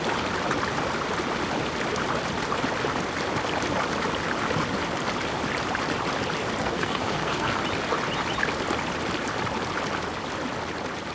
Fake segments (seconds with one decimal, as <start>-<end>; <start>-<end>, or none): 6.6-7.6